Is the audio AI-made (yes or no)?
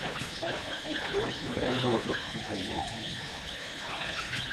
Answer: yes